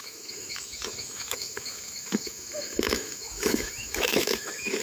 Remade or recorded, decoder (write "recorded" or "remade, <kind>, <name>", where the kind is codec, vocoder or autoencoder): remade, autoencoder, DAC-VAE